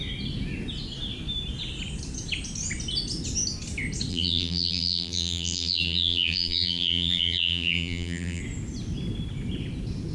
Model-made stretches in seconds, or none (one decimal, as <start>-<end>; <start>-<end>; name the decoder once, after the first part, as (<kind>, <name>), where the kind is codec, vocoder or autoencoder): 4.1-8.4 (vocoder, BigVGAN v2)